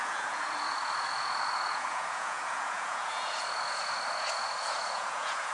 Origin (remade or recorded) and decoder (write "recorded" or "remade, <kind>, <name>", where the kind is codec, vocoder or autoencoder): remade, vocoder, Vocos